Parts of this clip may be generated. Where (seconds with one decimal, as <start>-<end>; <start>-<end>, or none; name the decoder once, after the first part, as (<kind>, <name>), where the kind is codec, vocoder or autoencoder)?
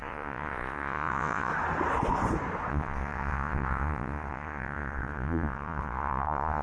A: 0.0-1.5 (vocoder, Vocos); 2.7-6.6